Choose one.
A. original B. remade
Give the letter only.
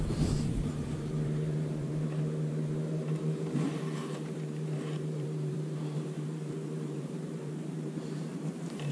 B